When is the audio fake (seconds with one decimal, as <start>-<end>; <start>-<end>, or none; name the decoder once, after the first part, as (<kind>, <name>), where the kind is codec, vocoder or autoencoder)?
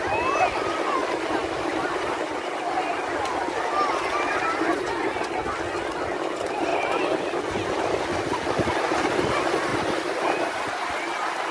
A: 1.4-4.6 (vocoder, BigVGAN v2); 6.7-9.1; 9.7-10.5